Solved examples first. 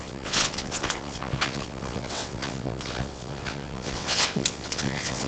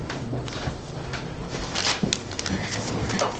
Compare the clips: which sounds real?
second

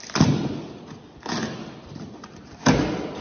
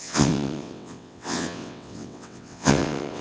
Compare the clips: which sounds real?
first